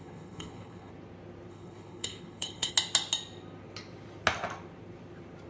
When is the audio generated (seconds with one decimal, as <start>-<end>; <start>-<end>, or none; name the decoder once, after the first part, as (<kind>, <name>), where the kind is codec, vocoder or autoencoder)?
0.0-0.9 (codec, HILCodec); 1.5-2.7